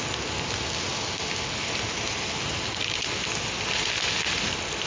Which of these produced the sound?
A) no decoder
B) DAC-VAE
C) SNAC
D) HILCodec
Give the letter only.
A